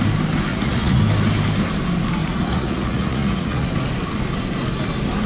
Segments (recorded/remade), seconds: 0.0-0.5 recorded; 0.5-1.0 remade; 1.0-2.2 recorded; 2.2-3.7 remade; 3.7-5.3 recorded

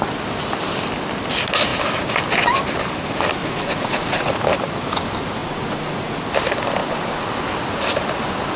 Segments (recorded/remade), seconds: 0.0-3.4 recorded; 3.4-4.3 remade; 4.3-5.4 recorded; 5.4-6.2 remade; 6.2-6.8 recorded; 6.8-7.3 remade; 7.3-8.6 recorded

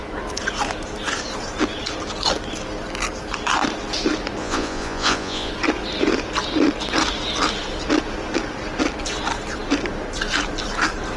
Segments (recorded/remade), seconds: 0.0-4.4 recorded; 4.4-5.5 remade; 5.5-11.2 recorded

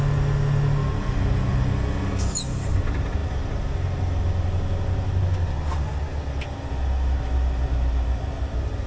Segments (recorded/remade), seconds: 0.0-8.9 recorded

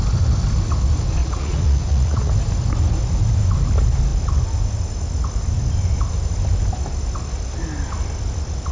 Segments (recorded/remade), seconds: 0.0-1.2 recorded; 1.2-2.3 remade; 2.3-8.7 recorded